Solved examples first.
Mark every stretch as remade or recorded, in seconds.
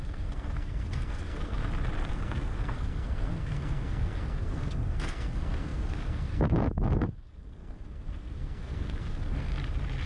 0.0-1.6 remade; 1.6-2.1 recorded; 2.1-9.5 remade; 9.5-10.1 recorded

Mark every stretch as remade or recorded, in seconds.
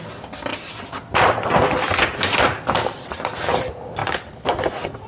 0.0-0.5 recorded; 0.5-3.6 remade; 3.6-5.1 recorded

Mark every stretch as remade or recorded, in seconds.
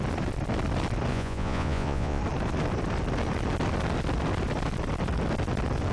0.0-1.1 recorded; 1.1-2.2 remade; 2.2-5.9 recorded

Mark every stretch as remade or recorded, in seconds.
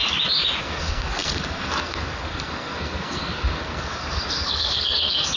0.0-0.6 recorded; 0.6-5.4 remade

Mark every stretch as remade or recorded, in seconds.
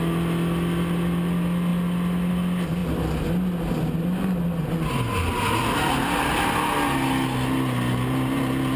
0.0-8.8 recorded